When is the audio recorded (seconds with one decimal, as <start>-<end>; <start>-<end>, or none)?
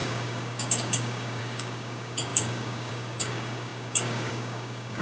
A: none